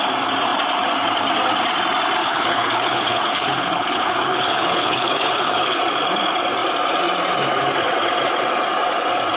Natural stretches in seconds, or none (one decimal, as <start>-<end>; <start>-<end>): 0.0-2.2; 5.8-9.4